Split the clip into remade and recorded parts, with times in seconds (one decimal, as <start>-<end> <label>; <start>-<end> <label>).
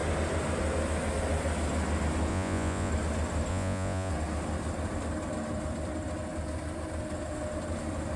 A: 0.0-2.3 recorded; 2.3-2.9 remade; 2.9-3.5 recorded; 3.5-4.1 remade; 4.1-8.2 recorded